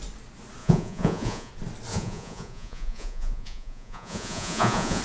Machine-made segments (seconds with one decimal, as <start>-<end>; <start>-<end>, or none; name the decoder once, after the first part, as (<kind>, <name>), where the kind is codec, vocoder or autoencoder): 0.6-1.5 (vocoder, Vocos); 1.9-5.0